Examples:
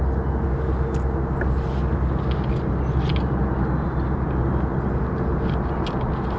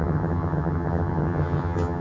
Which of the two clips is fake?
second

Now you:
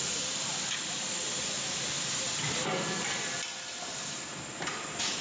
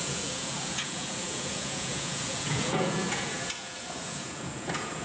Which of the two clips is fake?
second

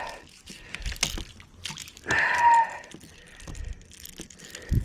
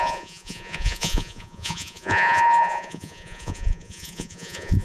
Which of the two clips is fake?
second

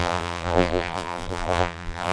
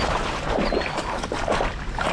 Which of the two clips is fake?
first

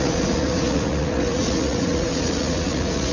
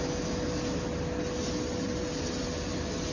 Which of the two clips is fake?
first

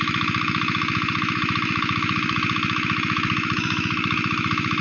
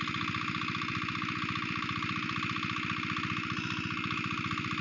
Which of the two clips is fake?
first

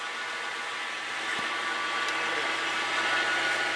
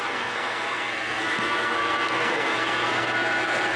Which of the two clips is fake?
second